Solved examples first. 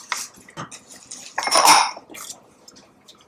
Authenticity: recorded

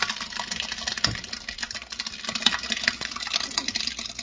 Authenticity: recorded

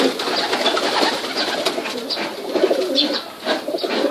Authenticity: recorded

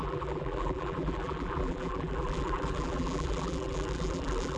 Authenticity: remade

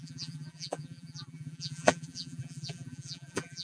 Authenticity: remade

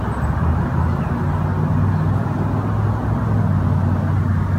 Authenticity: recorded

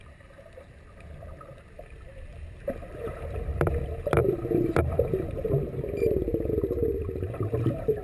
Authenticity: remade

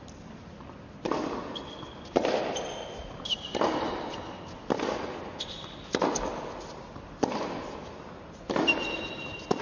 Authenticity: recorded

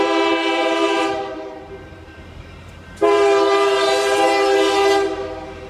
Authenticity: remade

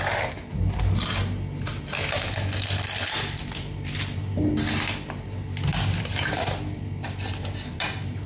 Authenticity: recorded